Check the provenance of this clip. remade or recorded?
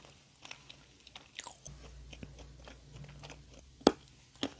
recorded